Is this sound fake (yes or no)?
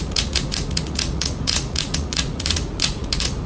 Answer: yes